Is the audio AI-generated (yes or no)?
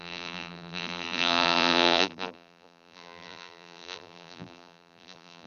yes